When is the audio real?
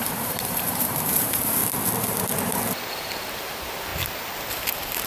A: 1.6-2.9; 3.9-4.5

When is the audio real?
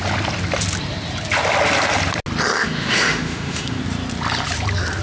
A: 0.0-2.6; 3.8-5.0